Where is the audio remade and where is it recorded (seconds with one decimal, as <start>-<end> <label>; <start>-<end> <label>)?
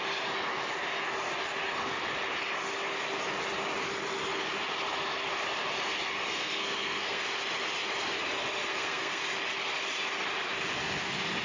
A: 0.0-6.3 recorded; 6.3-7.2 remade; 7.2-8.7 recorded; 8.7-9.2 remade; 9.2-11.4 recorded